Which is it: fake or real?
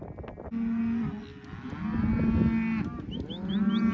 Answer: real